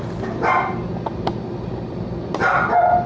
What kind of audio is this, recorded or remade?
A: recorded